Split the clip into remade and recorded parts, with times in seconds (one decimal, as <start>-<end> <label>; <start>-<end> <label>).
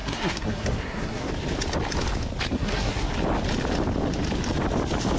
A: 0.0-1.3 remade; 1.3-2.5 recorded; 2.5-3.1 remade; 3.1-5.2 recorded